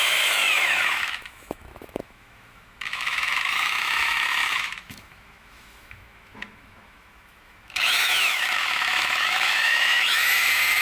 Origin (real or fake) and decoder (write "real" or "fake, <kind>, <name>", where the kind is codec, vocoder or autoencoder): fake, autoencoder, DAC-VAE